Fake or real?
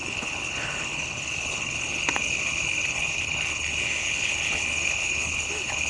fake